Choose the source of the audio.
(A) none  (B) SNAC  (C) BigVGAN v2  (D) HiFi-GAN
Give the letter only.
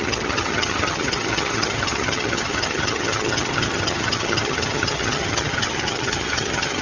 D